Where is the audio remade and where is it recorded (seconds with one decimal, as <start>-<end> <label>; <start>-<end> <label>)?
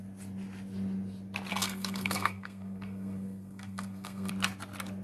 0.0-1.5 recorded; 1.5-4.3 remade; 4.3-5.0 recorded